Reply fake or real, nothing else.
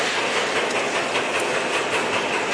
real